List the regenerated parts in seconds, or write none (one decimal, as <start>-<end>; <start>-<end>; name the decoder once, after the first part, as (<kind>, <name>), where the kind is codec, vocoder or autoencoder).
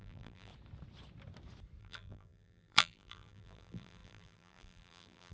0.0-0.5 (vocoder, BigVGAN v2); 1.8-5.3